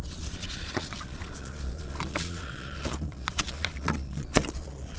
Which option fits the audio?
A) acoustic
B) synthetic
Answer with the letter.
B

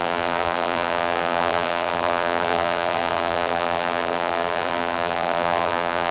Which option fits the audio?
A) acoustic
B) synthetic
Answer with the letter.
B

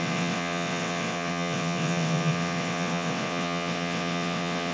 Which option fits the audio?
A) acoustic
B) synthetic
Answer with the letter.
B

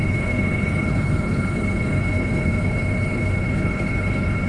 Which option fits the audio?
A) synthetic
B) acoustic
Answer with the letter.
A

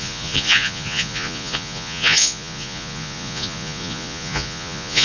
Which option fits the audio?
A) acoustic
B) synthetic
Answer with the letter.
B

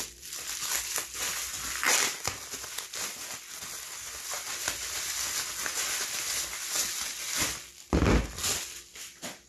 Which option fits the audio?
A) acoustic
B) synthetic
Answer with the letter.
A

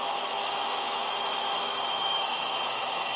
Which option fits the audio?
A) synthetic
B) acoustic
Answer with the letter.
A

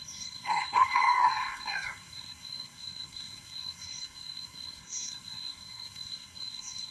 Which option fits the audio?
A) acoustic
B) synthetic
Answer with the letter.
B